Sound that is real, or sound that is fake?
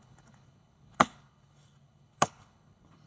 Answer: fake